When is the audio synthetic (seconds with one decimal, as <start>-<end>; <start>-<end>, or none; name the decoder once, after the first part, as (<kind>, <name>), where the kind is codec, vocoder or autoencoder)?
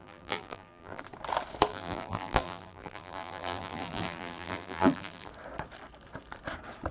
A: 0.0-1.0 (vocoder, BigVGAN v2); 1.7-5.3